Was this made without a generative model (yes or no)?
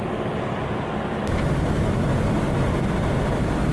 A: yes